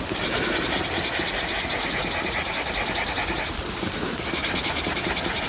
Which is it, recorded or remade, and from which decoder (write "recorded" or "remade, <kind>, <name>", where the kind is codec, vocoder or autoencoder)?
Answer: recorded